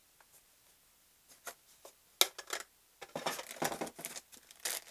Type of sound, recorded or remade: recorded